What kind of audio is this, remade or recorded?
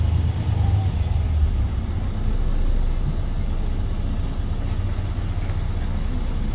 recorded